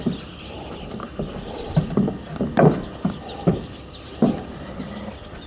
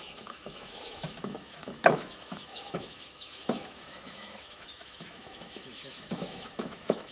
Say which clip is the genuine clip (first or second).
first